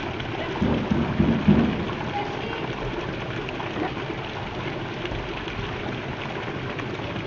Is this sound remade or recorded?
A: recorded